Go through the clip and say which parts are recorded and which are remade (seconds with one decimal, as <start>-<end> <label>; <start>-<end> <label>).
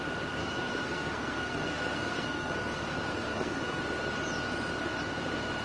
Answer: 0.0-0.4 recorded; 0.4-3.8 remade; 3.8-5.6 recorded